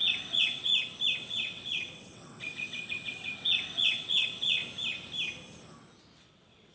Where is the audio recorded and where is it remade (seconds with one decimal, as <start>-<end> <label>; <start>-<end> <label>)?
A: 0.0-0.7 remade; 0.7-1.2 recorded; 1.2-4.6 remade; 4.6-6.2 recorded; 6.2-6.7 remade